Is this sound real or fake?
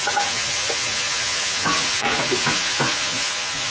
fake